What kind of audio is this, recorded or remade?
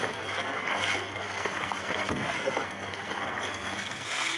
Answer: remade